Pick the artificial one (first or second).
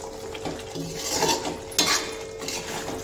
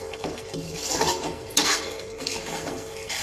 second